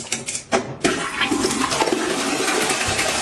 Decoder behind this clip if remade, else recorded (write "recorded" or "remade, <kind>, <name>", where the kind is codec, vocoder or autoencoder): remade, vocoder, BigVGAN v2